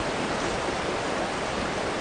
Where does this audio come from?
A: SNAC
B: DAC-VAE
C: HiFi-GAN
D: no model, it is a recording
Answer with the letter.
D